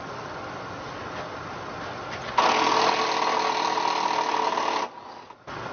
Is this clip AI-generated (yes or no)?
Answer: no